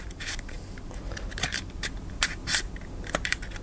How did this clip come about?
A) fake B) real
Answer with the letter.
A